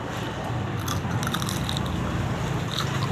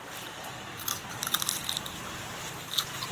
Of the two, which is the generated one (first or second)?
second